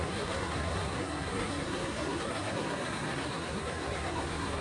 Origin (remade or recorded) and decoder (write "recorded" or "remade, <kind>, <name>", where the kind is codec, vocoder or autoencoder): remade, codec, SNAC